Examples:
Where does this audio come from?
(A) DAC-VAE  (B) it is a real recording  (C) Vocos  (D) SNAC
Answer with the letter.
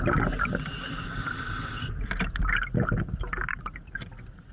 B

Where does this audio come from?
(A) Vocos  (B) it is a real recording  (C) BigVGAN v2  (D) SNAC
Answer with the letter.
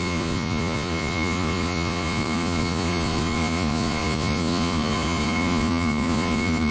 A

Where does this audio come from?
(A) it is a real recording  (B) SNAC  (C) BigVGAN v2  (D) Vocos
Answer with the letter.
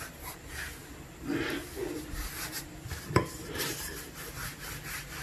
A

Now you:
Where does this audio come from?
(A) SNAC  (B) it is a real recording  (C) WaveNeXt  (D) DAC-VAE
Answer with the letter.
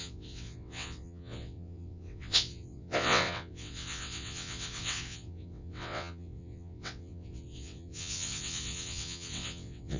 C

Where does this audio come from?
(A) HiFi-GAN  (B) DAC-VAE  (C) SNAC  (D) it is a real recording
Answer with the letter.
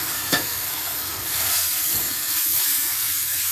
C